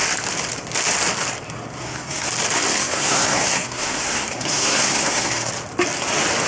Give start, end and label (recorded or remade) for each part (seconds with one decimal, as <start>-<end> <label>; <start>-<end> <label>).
0.0-1.8 recorded; 1.8-2.3 remade; 2.3-2.8 recorded; 2.8-5.5 remade; 5.5-6.5 recorded